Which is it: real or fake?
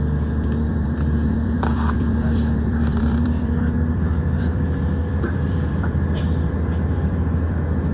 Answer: fake